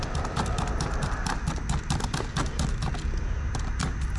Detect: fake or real real